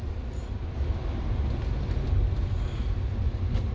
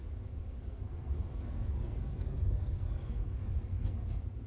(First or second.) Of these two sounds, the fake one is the second